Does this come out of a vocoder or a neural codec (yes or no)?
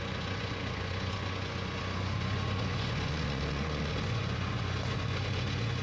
yes